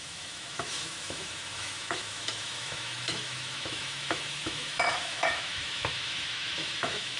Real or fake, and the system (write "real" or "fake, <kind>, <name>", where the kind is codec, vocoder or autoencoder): fake, autoencoder, DAC-VAE